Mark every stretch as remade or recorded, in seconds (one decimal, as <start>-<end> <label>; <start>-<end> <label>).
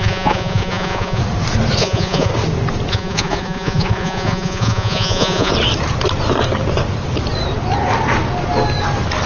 0.0-1.2 remade; 1.2-1.8 recorded; 1.8-2.3 remade; 2.3-2.9 recorded; 2.9-5.5 remade; 5.5-9.3 recorded